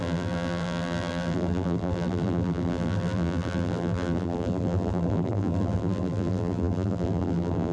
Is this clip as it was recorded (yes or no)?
no